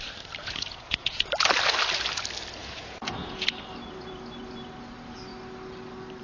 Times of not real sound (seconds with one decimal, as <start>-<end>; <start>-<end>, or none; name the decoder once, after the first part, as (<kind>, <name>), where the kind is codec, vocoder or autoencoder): 0.4-1.3 (vocoder, Vocos); 2.6-3.6